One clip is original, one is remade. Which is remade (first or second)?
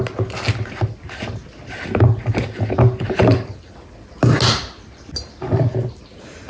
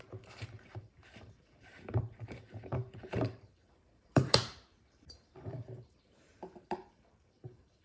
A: second